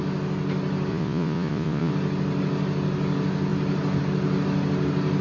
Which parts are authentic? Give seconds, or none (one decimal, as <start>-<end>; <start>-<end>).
0.0-0.9; 1.9-5.2